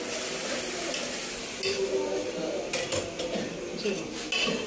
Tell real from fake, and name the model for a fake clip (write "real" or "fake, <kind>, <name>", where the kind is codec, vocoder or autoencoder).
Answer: real